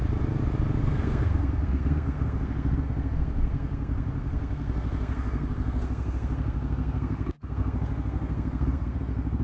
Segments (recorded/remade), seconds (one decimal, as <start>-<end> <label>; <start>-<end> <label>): 0.0-0.8 recorded; 0.8-9.4 remade